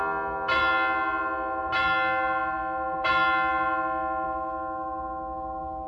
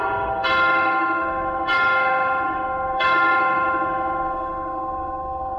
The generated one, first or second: second